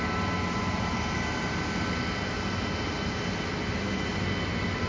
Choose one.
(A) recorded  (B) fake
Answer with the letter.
A